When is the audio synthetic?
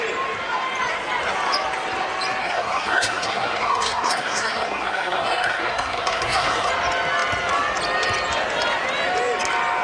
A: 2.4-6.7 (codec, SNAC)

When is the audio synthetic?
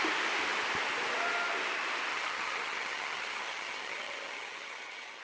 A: 2.1-5.2 (vocoder, HiFi-GAN)